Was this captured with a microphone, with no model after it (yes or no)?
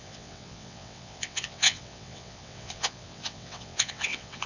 no